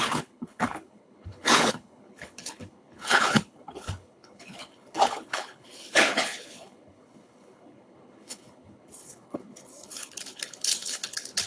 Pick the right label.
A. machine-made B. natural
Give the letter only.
A